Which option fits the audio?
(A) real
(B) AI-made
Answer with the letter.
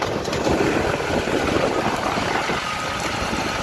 A